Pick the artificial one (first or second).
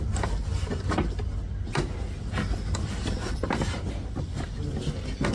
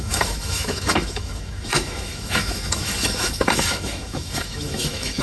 second